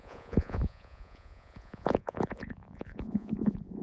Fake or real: fake